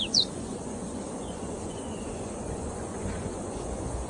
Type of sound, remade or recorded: remade